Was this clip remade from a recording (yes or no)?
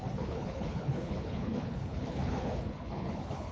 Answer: yes